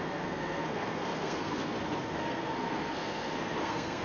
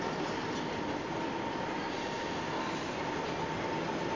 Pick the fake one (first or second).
first